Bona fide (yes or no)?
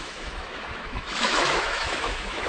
no